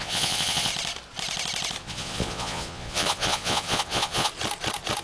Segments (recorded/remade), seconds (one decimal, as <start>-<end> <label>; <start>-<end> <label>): 0.0-0.7 remade; 0.7-1.8 recorded; 1.8-4.3 remade; 4.3-5.0 recorded